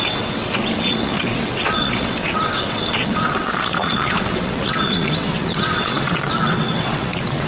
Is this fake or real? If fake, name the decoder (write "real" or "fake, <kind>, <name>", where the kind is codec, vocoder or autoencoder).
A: fake, vocoder, WaveNeXt